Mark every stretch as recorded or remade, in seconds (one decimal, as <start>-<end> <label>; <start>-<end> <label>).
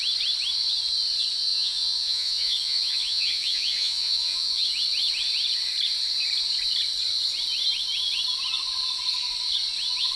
0.0-1.5 recorded; 1.5-4.7 remade; 4.7-10.2 recorded